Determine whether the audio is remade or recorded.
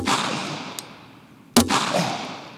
recorded